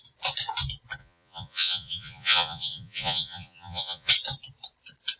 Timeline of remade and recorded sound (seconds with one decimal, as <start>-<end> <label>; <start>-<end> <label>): 0.0-1.0 recorded; 1.0-4.1 remade; 4.1-5.2 recorded